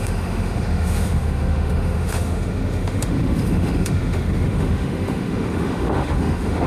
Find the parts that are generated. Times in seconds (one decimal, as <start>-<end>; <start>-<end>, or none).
0.0-6.7